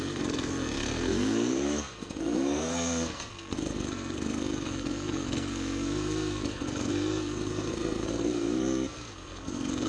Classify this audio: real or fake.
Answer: fake